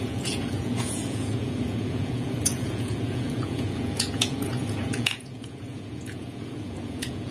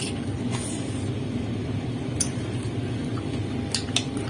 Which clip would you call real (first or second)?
second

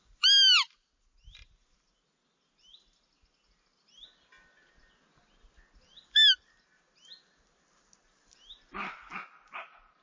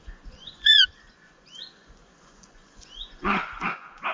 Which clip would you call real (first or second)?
first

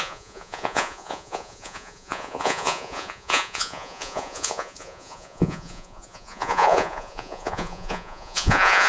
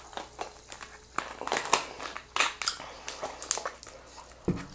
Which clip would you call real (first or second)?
second